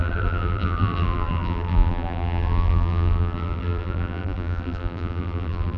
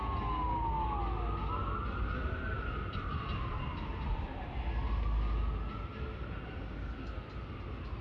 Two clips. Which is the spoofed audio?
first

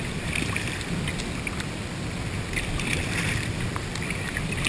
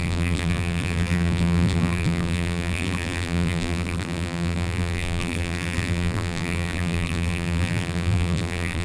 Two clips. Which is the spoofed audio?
second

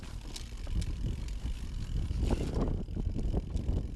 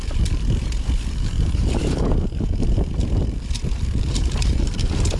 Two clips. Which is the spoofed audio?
second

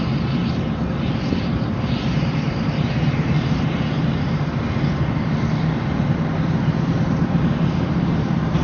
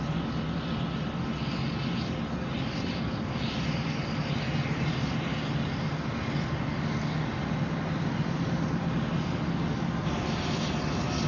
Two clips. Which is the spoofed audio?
first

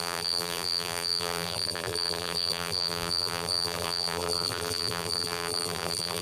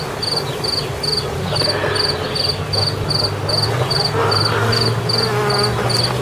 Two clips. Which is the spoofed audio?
first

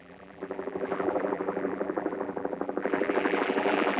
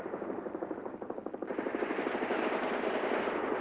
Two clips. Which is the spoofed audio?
first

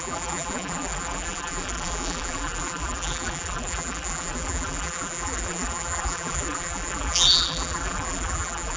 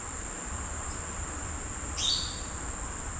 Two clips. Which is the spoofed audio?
first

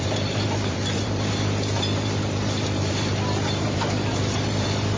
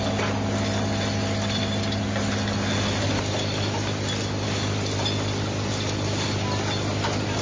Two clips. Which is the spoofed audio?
first